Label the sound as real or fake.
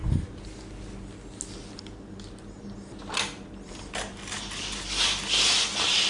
real